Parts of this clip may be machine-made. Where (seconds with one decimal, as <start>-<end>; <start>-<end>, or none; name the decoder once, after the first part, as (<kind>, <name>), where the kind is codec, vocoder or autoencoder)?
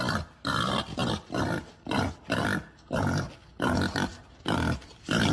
none